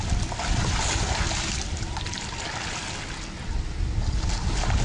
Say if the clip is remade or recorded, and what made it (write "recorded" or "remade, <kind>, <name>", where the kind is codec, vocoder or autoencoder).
recorded